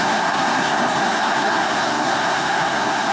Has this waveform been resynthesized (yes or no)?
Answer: yes